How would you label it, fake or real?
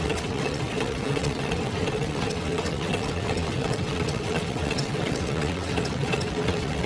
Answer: fake